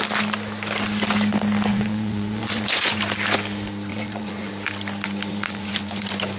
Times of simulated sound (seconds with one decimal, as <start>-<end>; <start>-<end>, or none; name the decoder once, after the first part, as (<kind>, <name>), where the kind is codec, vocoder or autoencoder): 1.7-3.0 (vocoder, Vocos); 3.9-4.5; 5.3-6.0